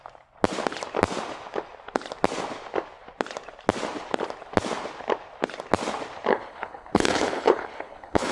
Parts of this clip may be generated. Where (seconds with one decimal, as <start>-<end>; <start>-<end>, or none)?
6.3-8.3